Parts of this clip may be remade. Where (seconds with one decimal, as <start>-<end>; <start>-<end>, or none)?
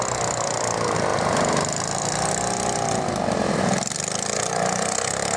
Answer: none